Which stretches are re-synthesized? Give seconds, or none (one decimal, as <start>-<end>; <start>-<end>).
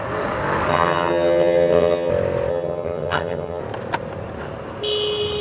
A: 0.7-2.1; 2.5-3.6